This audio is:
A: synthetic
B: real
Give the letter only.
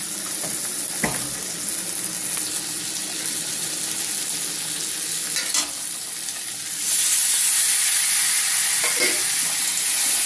B